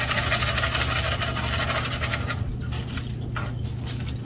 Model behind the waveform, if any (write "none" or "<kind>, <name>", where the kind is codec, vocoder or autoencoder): none